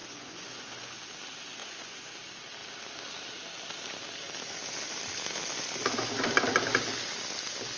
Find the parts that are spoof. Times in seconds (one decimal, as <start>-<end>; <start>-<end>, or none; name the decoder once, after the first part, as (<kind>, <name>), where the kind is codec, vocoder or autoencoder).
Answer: 0.0-0.9 (vocoder, Vocos); 1.6-2.2